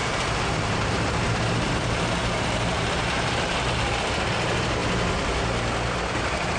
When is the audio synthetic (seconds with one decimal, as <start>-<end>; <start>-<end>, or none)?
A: 0.0-1.1; 2.2-4.2